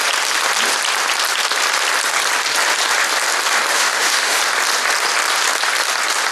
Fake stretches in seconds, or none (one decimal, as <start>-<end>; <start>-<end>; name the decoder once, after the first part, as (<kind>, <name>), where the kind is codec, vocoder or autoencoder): 3.7-4.4 (autoencoder, DAC-VAE)